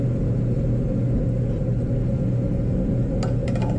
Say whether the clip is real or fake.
real